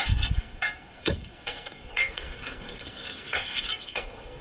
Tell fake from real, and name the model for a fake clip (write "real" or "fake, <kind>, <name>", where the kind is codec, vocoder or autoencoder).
fake, codec, SNAC